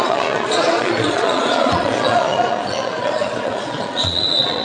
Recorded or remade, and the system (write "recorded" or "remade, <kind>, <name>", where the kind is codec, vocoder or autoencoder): remade, vocoder, Vocos